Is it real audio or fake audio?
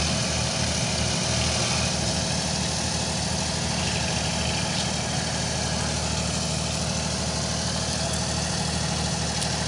real